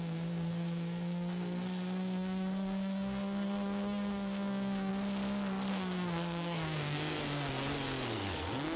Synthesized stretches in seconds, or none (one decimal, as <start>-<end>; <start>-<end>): 0.0-4.9; 5.7-8.8